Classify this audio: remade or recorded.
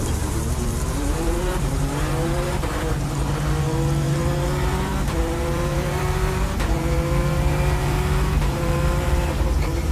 remade